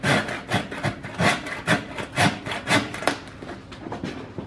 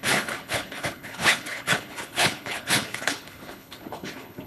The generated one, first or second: second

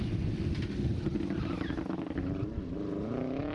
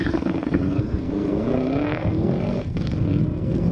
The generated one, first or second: second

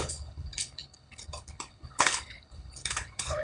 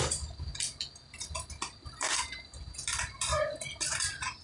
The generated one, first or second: first